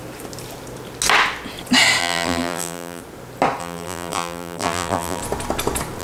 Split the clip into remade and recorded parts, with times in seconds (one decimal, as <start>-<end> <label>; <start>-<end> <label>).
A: 0.0-2.0 recorded; 2.0-3.0 remade; 3.0-3.6 recorded; 3.6-5.2 remade; 5.2-6.0 recorded